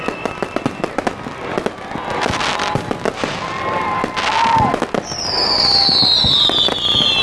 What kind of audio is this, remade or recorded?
recorded